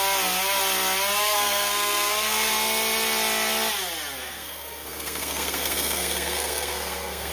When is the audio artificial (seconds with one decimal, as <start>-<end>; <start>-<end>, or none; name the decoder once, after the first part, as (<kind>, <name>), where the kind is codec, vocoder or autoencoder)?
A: 1.2-2.5 (codec, SNAC); 4.2-7.3